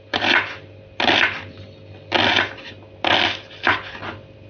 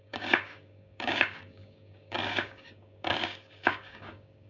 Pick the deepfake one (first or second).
second